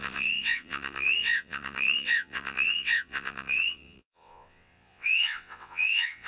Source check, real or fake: fake